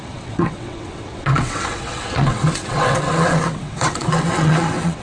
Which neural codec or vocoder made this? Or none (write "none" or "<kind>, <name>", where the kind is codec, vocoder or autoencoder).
vocoder, WaveNeXt